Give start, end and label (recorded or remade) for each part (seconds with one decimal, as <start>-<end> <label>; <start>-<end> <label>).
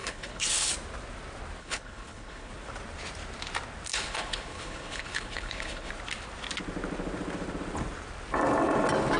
0.0-0.7 remade; 0.7-1.6 recorded; 1.6-2.5 remade; 2.5-3.9 recorded; 3.9-5.9 remade; 5.9-9.2 recorded